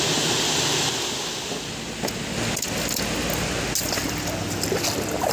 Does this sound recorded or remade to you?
recorded